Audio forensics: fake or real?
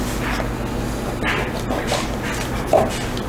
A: real